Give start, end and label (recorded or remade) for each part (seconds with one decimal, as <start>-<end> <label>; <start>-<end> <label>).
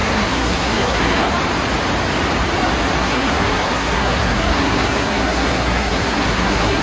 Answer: 0.0-1.3 remade; 1.3-3.0 recorded; 3.0-6.8 remade